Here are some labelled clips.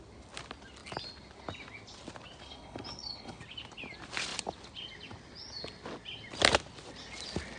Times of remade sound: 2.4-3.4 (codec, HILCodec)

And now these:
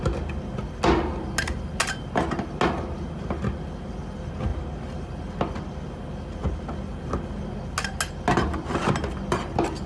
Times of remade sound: none